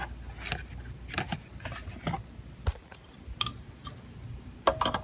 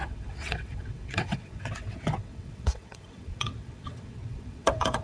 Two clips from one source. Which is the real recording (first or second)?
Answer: first